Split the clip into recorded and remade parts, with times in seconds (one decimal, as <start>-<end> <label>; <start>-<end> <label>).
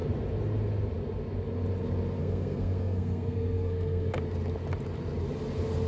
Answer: 0.0-2.2 recorded; 2.2-4.1 remade; 4.1-5.9 recorded